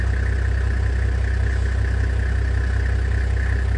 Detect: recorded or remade recorded